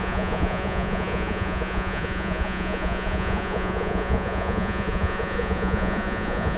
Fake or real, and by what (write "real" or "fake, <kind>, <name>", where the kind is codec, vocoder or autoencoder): fake, vocoder, Vocos